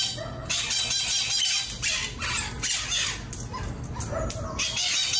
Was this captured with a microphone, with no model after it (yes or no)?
yes